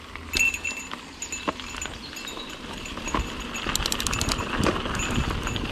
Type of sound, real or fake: real